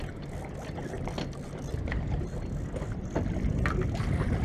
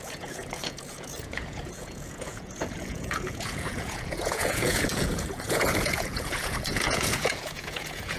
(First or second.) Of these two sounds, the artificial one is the second